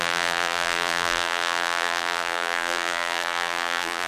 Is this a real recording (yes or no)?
no